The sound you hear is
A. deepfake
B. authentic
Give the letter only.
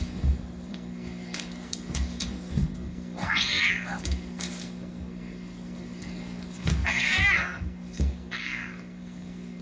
A